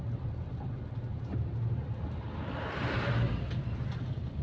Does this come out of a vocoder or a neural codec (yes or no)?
no